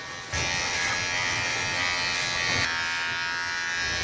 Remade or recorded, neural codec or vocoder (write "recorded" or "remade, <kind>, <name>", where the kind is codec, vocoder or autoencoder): recorded